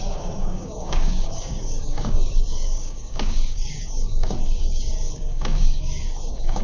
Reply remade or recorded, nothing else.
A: remade